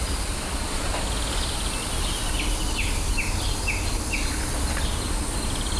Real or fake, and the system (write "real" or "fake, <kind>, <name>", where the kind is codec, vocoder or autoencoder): real